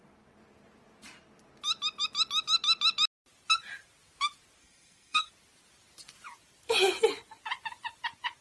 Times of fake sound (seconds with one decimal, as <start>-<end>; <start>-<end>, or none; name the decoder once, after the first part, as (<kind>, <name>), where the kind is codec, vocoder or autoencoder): 4.6-5.3 (codec, SNAC)